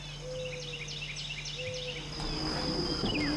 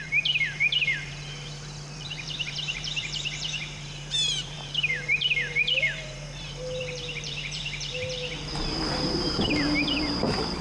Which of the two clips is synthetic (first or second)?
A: second